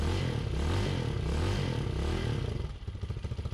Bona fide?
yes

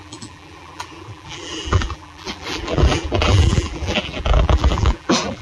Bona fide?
no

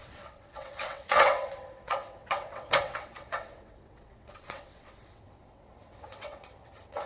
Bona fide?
no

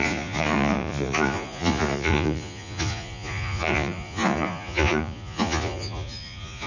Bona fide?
no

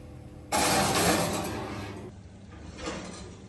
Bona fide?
yes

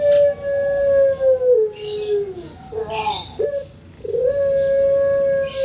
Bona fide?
yes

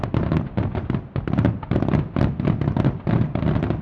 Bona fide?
yes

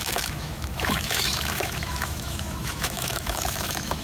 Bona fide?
no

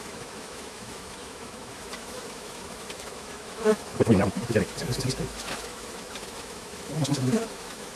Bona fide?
no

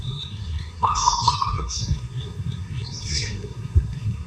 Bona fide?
no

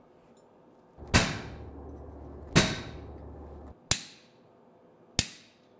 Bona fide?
yes